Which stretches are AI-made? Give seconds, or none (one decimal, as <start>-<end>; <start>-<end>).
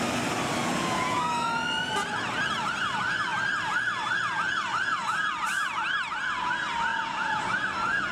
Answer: 0.6-1.2; 6.9-7.4